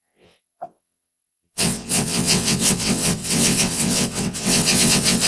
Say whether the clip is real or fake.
fake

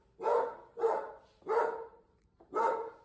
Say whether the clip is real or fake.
real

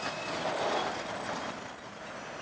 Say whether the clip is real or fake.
real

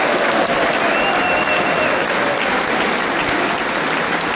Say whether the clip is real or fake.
real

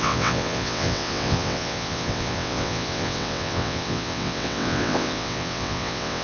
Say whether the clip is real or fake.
fake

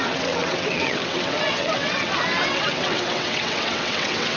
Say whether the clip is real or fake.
fake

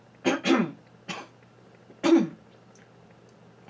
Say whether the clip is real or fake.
real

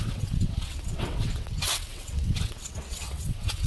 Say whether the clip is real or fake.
fake